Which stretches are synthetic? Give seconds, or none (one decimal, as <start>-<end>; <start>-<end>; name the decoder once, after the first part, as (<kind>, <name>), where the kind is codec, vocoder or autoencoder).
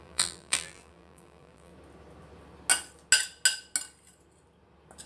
0.0-1.7 (vocoder, BigVGAN v2)